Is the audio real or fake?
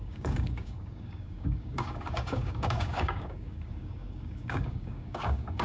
fake